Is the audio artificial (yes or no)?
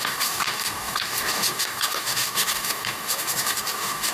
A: yes